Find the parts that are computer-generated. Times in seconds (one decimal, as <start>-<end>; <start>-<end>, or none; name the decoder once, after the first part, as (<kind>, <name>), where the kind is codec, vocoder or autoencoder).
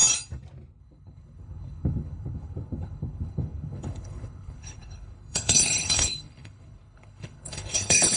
0.8-8.2 (codec, HILCodec)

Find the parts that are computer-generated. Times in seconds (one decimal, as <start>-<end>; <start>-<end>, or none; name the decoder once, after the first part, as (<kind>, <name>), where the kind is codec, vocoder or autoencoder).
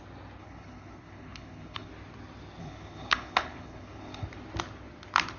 0.4-1.9 (codec, HILCodec); 2.6-4.3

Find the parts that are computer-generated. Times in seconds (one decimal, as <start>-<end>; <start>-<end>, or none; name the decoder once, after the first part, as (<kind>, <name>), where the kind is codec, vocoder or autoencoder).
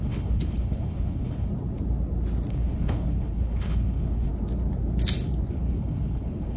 0.0-1.5 (codec, HILCodec); 2.5-4.3; 5.5-6.6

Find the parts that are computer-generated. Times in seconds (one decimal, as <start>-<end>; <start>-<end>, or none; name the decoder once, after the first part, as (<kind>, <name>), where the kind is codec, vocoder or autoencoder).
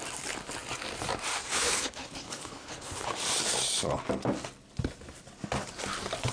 1.3-3.1 (codec, HILCodec)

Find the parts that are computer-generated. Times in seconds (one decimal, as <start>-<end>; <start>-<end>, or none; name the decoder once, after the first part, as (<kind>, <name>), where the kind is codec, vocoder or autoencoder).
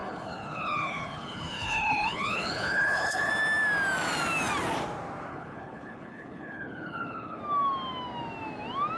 0.0-3.3 (codec, HILCodec); 5.3-7.4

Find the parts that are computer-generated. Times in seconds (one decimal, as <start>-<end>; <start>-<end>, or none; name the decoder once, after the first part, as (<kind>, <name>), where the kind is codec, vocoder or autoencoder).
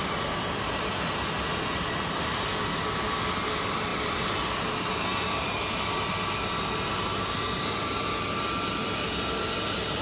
none